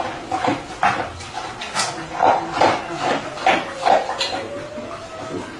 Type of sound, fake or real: real